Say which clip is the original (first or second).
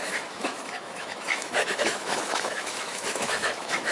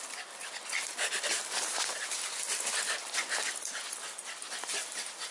second